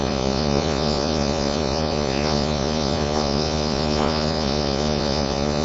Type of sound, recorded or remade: remade